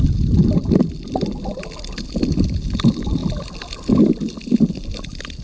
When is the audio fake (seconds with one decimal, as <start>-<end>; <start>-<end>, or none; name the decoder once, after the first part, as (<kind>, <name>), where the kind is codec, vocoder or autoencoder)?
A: none